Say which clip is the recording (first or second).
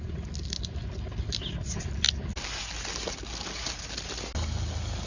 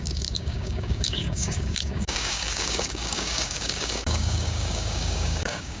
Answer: first